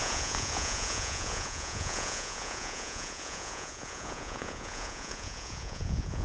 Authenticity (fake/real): fake